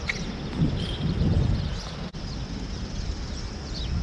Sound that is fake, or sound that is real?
real